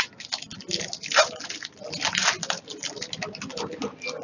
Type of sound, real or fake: real